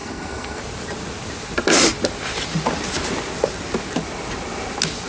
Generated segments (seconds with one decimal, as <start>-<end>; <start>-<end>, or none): 0.0-0.6